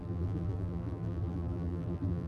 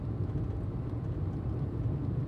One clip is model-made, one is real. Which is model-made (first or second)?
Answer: first